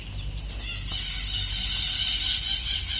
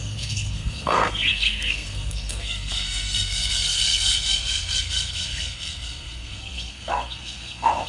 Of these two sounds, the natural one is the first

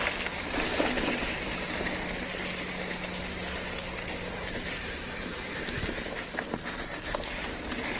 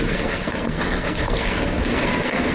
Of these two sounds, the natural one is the first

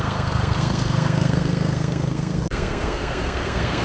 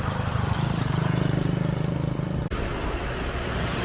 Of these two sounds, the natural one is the second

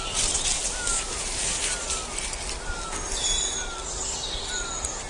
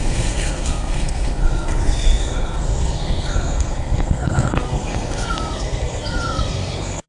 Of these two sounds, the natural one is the first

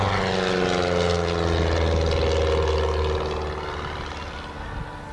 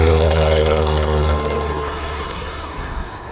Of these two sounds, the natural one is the first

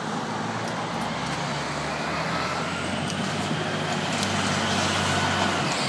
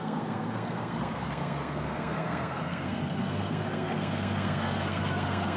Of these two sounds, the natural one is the first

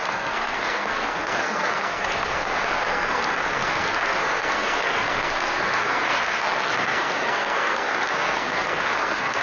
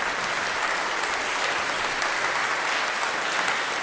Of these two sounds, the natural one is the second